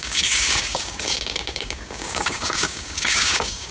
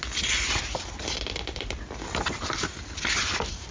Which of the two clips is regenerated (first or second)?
first